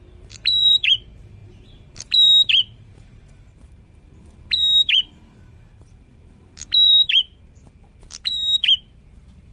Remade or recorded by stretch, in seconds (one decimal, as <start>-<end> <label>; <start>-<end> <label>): 0.0-9.5 remade